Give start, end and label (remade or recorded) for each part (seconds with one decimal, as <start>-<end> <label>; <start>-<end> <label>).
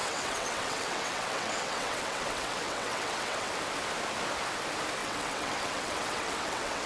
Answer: 0.0-3.5 remade; 3.5-5.0 recorded; 5.0-6.9 remade